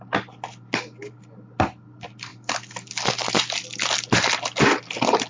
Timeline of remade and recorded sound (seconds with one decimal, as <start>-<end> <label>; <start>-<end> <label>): 0.0-5.3 recorded